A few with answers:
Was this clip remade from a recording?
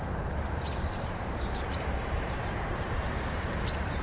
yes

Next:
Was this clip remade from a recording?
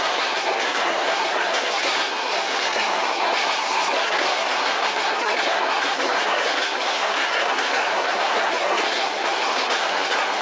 yes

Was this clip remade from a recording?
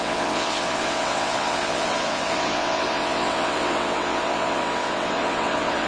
yes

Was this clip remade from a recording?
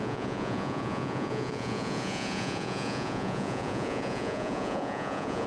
yes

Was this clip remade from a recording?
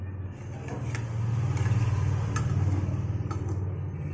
no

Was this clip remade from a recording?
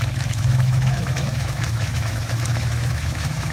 yes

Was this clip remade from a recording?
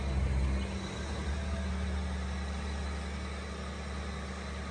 no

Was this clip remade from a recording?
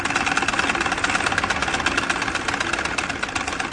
no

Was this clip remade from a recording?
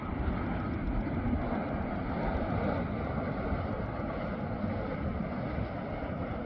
no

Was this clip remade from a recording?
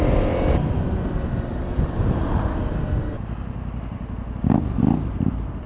no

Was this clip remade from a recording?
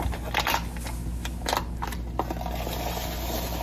no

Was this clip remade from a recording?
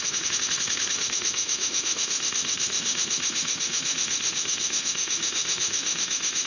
yes